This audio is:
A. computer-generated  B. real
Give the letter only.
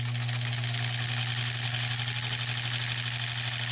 B